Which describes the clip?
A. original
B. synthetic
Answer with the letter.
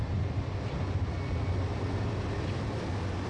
A